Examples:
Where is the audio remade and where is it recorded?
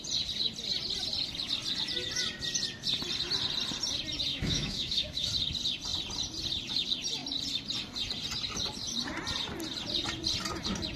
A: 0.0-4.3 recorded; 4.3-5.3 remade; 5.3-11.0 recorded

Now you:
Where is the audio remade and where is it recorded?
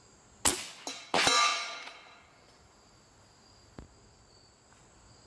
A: 0.0-5.3 recorded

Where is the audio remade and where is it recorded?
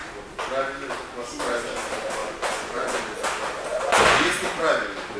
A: 0.0-2.2 recorded; 2.2-3.0 remade; 3.0-3.7 recorded; 3.7-4.7 remade; 4.7-5.2 recorded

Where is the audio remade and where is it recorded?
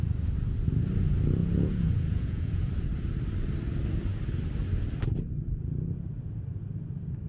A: 0.0-1.4 recorded; 1.4-2.7 remade; 2.7-7.3 recorded